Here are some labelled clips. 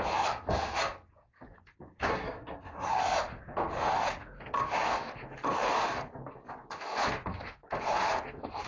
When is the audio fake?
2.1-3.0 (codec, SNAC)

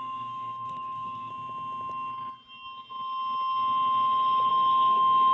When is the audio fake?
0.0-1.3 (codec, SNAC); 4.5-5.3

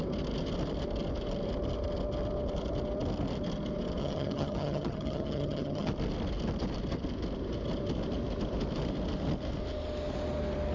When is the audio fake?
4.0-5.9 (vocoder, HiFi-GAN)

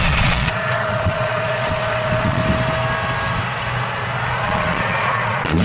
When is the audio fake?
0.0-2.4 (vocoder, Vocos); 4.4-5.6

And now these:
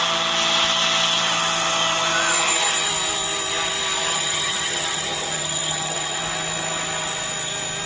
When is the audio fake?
4.1-6.2 (vocoder, HiFi-GAN)

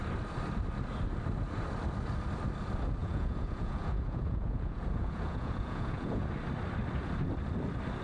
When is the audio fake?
3.0-6.3 (vocoder, Vocos)

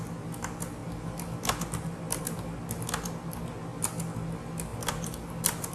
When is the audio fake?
4.7-5.7 (vocoder, BigVGAN v2)